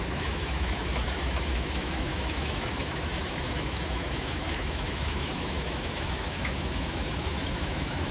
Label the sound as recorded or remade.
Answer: remade